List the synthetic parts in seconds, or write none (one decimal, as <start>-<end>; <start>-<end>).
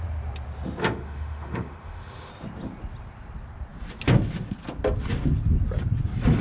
0.8-2.3